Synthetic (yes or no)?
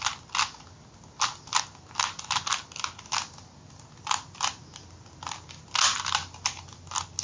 no